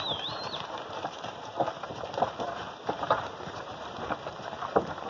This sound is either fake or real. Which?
fake